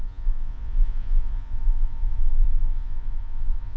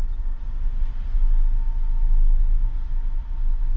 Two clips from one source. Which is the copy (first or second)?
first